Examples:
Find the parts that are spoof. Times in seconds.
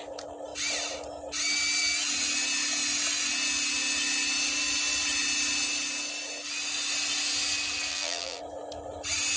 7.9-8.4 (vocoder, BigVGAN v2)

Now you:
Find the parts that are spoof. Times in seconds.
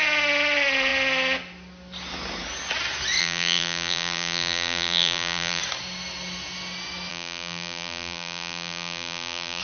3.2-5.6 (vocoder, BigVGAN v2); 7.1-9.6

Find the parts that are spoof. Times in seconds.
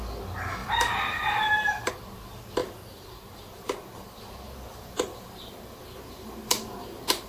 0.6-1.9 (vocoder, BigVGAN v2); 2.6-4.2; 4.7-7.3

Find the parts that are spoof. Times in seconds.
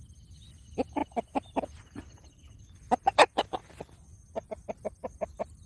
1.0-2.4 (vocoder, BigVGAN v2)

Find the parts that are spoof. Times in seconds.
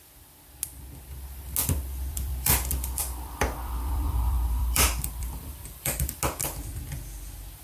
1.6-6.2 (vocoder, BigVGAN v2)